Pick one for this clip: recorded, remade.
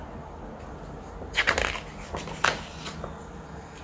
recorded